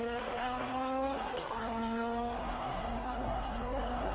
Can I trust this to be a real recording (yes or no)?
no